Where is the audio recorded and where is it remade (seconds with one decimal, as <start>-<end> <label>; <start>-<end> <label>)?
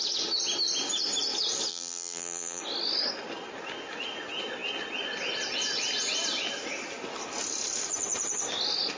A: 0.0-1.7 recorded; 1.7-2.6 remade; 2.6-9.0 recorded